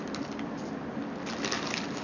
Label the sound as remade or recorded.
recorded